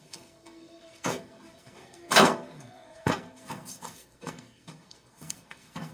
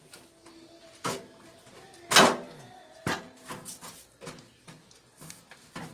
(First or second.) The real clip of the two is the second